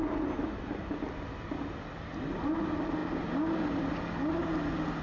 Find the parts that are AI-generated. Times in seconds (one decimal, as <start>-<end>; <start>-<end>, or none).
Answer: none